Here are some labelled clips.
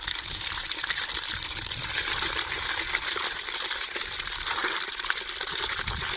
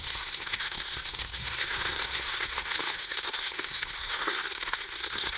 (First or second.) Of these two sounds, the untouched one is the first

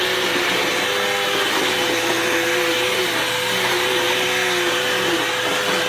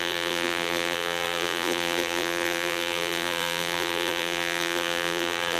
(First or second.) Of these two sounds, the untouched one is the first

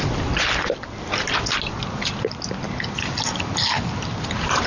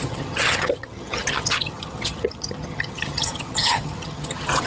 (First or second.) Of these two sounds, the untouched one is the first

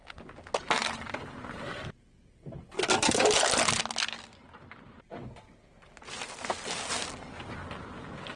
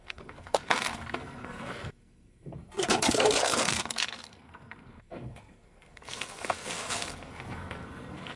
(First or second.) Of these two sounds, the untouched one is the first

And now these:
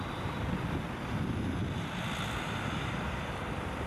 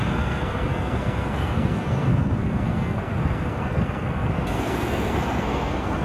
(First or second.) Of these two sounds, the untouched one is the first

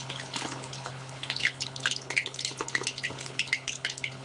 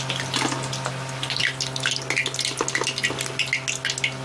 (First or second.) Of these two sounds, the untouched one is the second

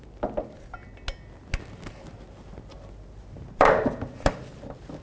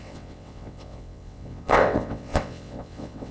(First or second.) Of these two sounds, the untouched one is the first